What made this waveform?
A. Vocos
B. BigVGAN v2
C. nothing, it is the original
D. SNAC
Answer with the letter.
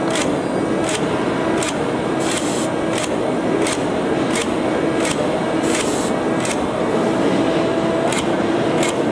C